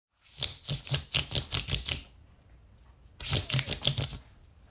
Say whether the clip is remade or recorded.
recorded